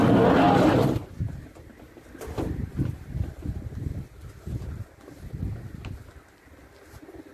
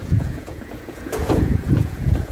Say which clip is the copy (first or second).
second